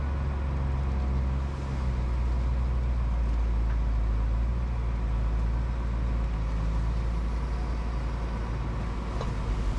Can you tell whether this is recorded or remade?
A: recorded